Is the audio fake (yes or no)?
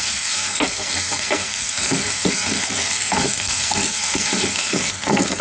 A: yes